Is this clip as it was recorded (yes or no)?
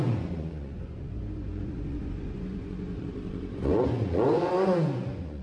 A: no